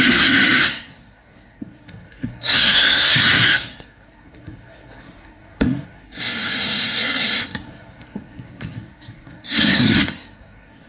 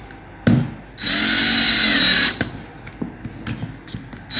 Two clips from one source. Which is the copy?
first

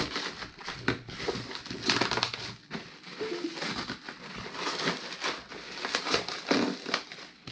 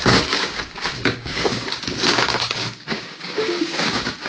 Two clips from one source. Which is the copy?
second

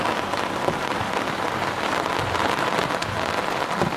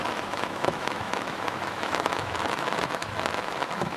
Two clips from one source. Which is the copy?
second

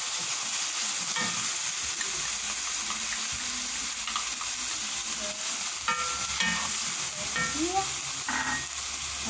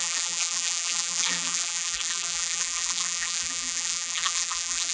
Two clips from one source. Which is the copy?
second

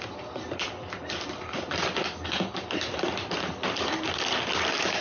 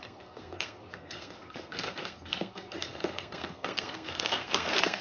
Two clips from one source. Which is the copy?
second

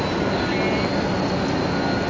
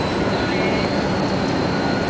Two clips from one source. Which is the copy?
second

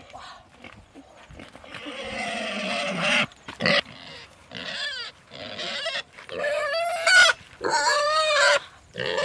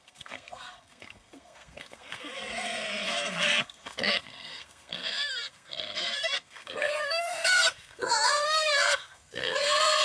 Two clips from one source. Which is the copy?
second